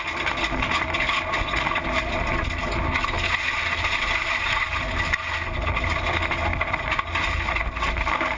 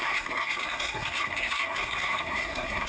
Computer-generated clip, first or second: second